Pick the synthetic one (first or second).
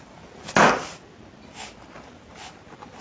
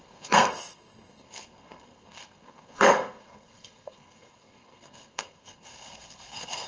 second